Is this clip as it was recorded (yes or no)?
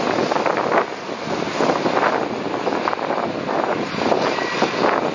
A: yes